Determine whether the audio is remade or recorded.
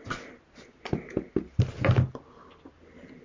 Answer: recorded